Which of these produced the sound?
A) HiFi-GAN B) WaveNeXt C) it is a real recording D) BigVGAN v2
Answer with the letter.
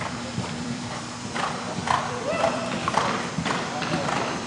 D